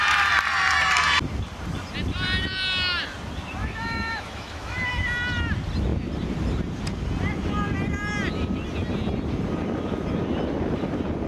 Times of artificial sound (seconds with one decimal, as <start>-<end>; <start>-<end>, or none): 3.6-4.9

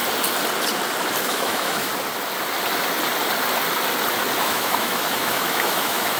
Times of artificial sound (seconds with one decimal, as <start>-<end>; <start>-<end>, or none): 1.2-1.9; 4.4-6.2

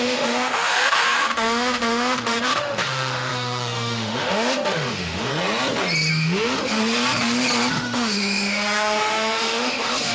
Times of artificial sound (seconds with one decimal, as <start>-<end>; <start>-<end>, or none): 0.0-5.3; 6.1-6.8; 7.7-10.1

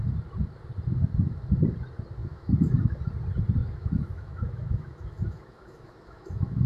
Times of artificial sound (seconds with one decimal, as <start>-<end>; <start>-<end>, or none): 2.2-3.0; 3.6-6.7

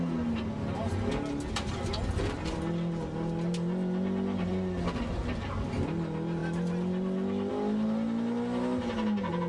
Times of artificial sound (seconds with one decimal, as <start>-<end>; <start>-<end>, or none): none

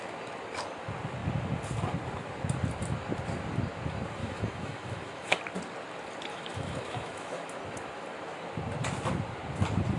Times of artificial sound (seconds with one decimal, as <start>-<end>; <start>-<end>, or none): 4.2-5.4; 6.3-7.5

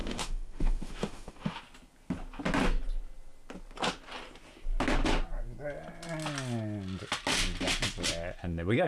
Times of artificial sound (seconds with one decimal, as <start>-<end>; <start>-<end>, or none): 0.0-1.6